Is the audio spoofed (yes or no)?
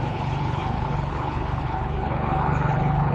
yes